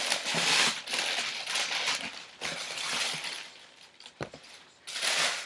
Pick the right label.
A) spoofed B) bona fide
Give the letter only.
B